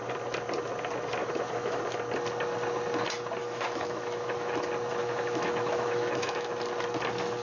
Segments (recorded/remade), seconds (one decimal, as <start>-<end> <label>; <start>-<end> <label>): 0.0-1.2 recorded; 1.2-1.8 remade; 1.8-3.4 recorded; 3.4-4.6 remade; 4.6-5.0 recorded; 5.0-6.5 remade; 6.5-7.4 recorded

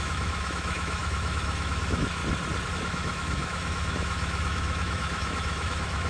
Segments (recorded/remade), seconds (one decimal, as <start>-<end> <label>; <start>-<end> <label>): 0.0-2.2 remade; 2.2-2.7 recorded; 2.7-6.1 remade

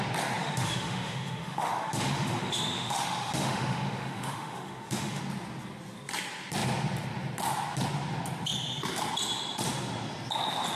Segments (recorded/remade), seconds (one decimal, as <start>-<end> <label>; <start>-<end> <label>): 0.0-0.4 recorded; 0.4-5.2 remade; 5.2-10.8 recorded

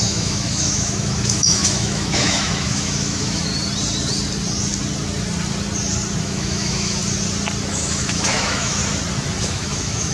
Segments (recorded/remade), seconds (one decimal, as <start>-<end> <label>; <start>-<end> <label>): 0.0-3.5 remade; 3.5-6.2 recorded; 6.2-7.0 remade; 7.0-7.7 recorded; 7.7-8.8 remade; 8.8-9.4 recorded; 9.4-10.1 remade